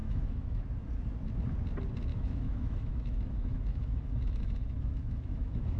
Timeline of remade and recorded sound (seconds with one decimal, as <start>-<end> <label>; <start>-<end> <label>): 0.0-0.6 remade; 0.6-2.1 recorded; 2.1-5.8 remade